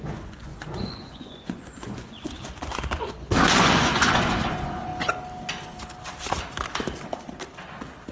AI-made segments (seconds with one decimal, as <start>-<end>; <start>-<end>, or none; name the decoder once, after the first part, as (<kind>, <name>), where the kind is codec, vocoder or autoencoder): 0.0-4.9 (vocoder, Vocos)